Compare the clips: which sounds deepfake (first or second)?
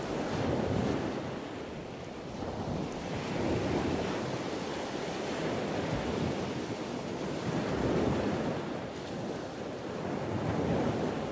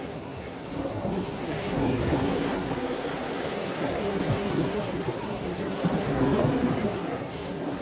second